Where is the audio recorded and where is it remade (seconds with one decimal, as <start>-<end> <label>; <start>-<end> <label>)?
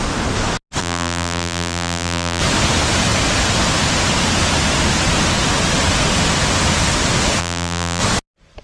0.0-0.8 recorded; 0.8-2.4 remade; 2.4-7.4 recorded; 7.4-8.0 remade; 8.0-8.6 recorded